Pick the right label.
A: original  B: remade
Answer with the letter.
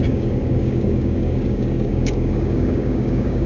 B